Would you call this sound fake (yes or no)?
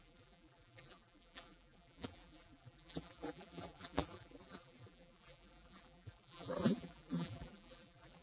yes